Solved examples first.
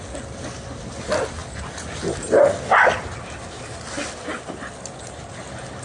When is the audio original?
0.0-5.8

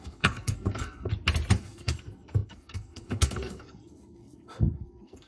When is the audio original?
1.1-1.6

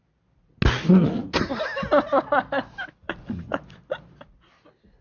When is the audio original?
0.0-5.0

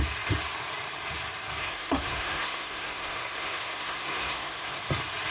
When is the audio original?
0.0-1.6; 4.8-5.3